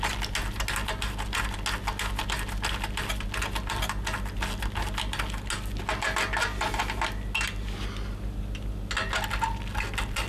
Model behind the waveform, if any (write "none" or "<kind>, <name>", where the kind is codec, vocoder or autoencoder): none